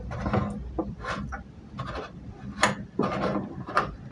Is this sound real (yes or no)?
yes